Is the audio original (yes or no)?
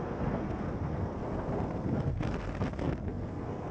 no